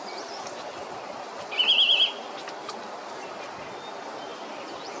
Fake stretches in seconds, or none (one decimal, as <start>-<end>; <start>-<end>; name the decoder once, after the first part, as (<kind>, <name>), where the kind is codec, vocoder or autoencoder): none